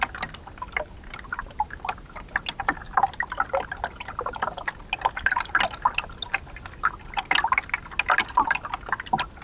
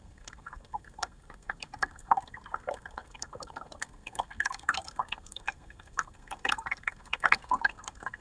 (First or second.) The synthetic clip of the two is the second